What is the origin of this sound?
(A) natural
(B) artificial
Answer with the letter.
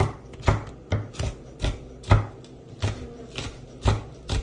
A